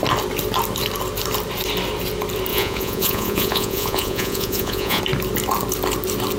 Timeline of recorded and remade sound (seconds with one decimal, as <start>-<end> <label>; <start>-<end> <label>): 0.0-2.5 recorded; 2.5-5.0 remade; 5.0-6.4 recorded